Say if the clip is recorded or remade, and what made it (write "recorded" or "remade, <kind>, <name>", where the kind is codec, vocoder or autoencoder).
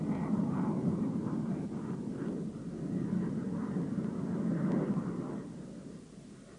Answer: recorded